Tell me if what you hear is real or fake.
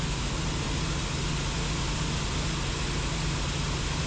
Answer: real